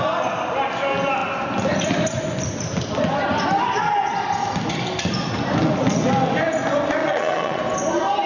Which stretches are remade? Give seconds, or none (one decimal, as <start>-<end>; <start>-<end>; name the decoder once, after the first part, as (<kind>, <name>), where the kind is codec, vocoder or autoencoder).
7.0-7.6 (vocoder, Vocos)

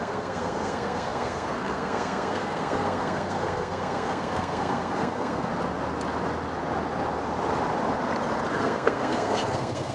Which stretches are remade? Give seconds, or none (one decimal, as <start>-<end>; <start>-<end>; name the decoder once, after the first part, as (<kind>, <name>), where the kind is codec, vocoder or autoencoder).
0.0-5.5 (codec, SNAC); 8.5-9.9